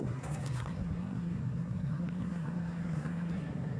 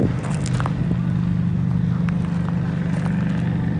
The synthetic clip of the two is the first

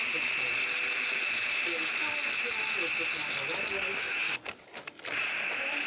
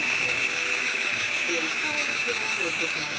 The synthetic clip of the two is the second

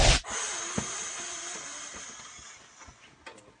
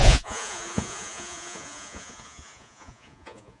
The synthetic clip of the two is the second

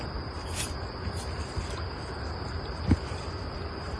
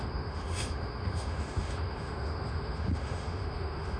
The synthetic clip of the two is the second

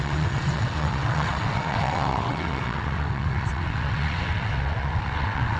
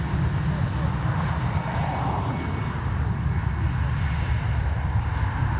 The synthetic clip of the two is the first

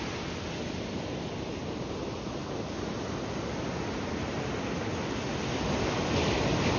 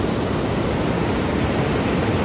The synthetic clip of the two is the second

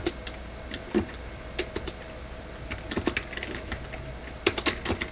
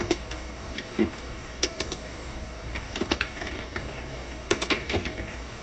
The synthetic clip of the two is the second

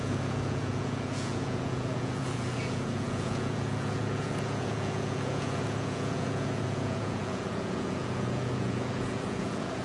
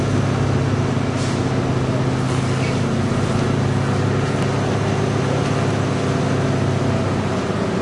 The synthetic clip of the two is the first